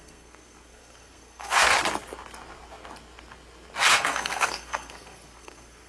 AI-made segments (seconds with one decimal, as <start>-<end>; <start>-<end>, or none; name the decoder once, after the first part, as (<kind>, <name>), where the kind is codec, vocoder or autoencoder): 0.0-1.7 (codec, SNAC); 3.9-5.9